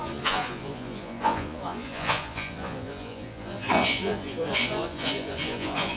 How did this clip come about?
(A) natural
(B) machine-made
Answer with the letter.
B